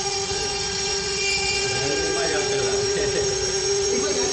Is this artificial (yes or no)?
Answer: yes